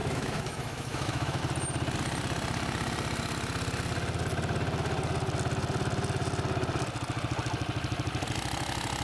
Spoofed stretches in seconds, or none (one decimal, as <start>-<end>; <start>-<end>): 0.0-1.4